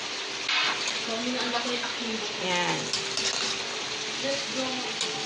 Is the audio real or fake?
real